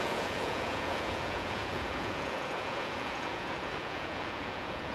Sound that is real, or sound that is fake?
fake